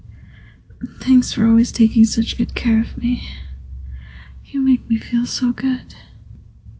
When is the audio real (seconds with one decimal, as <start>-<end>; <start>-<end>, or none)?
0.0-0.9; 2.4-4.1; 5.5-6.8

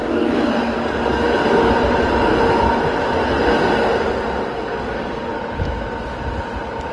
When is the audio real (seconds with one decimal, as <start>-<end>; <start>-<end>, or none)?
1.7-4.5; 5.4-6.9